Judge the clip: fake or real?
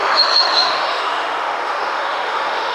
fake